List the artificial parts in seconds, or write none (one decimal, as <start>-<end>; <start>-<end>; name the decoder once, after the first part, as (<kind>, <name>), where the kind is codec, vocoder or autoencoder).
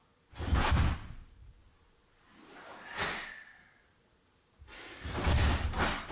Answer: none